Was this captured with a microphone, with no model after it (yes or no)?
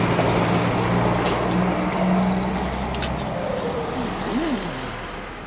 yes